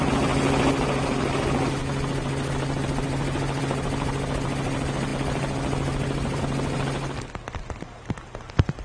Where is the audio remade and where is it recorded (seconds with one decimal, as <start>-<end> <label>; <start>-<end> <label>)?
0.0-8.8 recorded